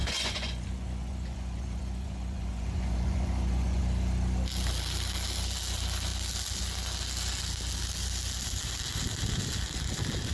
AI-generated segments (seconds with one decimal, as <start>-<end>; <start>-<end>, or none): 0.0-3.8